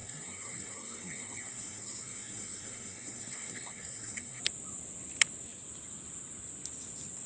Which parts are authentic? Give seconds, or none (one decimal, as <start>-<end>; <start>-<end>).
4.4-7.3